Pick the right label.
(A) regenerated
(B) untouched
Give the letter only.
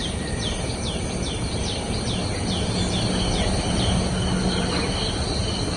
B